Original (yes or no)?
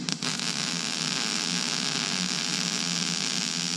yes